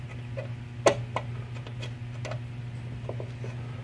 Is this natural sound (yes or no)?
yes